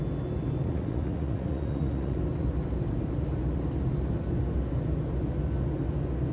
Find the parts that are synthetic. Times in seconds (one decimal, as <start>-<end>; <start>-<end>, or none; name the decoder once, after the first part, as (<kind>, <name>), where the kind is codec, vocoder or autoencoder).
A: 0.6-2.2 (vocoder, Vocos)